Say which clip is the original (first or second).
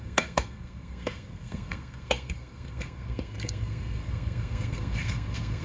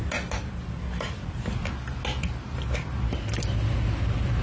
second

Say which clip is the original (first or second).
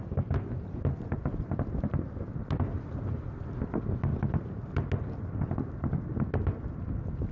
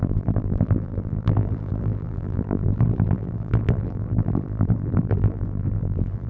first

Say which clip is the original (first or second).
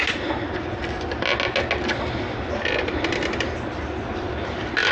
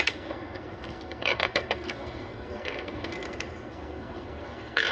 first